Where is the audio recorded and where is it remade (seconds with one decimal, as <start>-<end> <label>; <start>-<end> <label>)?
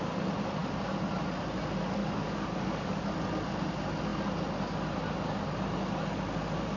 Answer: 0.0-2.0 recorded; 2.0-3.1 remade; 3.1-6.8 recorded